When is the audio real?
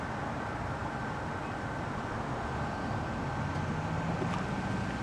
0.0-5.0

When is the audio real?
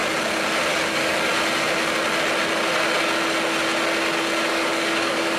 0.0-0.9; 1.3-4.5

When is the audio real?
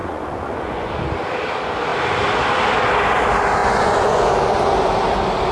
0.9-3.6; 4.3-5.5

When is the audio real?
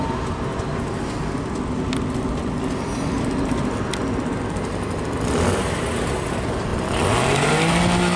0.0-8.2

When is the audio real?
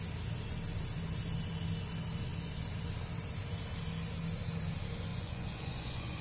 0.0-5.1